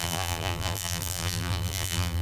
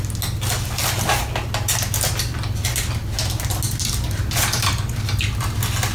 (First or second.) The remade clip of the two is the first